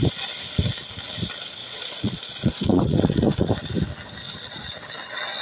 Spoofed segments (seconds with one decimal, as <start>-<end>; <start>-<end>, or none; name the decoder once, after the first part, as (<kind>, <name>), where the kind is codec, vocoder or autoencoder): 1.6-3.5 (vocoder, Vocos)